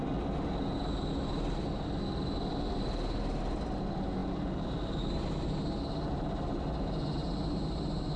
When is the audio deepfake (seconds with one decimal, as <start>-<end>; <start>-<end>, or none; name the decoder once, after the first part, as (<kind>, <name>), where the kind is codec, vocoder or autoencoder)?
none